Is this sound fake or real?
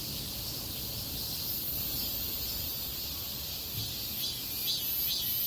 real